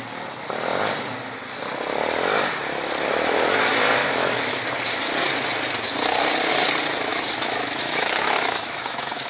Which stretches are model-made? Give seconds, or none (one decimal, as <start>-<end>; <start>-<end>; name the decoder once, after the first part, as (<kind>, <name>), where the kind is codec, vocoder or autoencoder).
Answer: 4.0-4.6 (autoencoder, DAC-VAE); 7.1-9.3